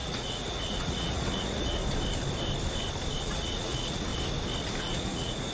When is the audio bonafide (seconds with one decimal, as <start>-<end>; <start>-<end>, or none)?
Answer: 1.8-3.2; 4.1-4.8